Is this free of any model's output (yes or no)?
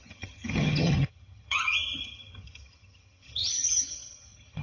no